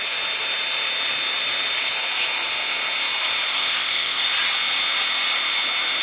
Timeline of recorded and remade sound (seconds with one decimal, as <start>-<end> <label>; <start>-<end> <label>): 0.0-3.5 recorded; 3.5-4.3 remade; 4.3-6.0 recorded